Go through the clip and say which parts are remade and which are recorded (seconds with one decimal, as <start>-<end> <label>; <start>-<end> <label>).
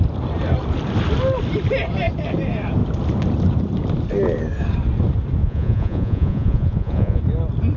0.0-5.4 recorded; 5.4-7.2 remade; 7.2-7.8 recorded